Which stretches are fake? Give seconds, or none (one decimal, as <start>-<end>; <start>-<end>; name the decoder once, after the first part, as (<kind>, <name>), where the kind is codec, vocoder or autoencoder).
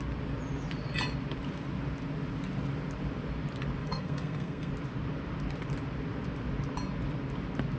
3.8-4.7 (codec, SNAC)